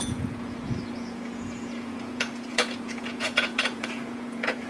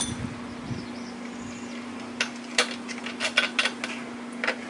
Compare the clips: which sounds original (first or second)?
second